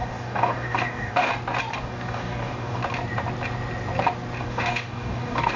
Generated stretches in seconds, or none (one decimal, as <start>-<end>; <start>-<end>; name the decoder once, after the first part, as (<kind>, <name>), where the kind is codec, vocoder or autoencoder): 0.0-1.3 (codec, DAC); 1.8-2.8; 4.4-5.6